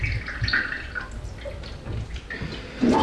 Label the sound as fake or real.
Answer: real